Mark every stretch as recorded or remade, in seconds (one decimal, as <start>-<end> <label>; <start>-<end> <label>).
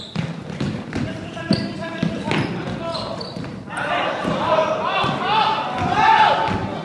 0.0-6.8 recorded